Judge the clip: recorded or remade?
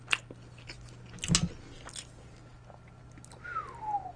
recorded